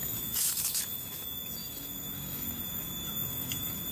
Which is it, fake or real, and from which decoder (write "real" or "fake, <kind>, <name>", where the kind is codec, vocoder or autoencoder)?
fake, autoencoder, DAC-VAE